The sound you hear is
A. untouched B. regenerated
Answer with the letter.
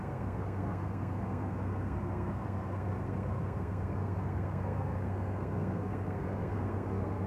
B